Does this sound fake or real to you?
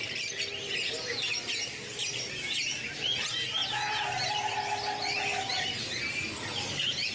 real